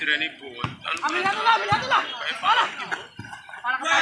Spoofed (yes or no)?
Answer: no